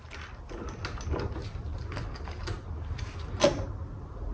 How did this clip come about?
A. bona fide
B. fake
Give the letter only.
A